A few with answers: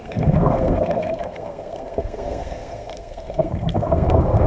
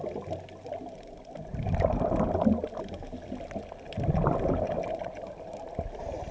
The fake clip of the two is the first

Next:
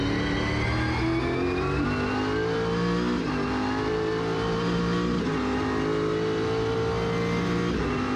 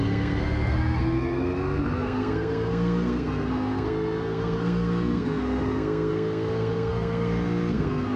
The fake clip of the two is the second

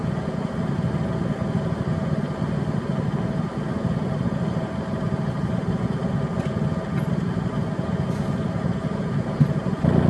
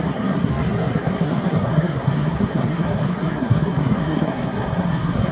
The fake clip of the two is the second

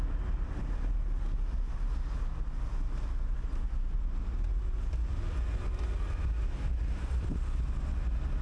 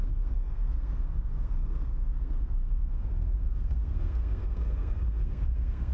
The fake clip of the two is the second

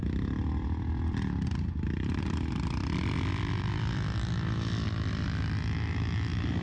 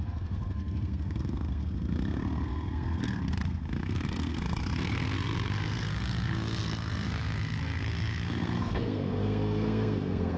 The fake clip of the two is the second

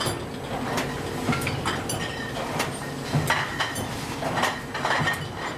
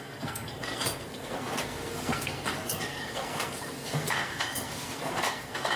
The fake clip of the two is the second